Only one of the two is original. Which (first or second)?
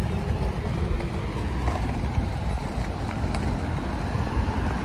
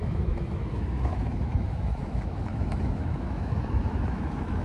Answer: first